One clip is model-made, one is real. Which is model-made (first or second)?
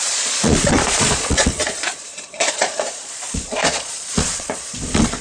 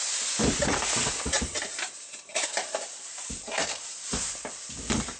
first